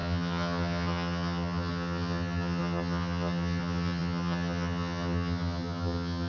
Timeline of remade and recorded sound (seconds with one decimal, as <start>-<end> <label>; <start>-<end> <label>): 0.0-6.3 remade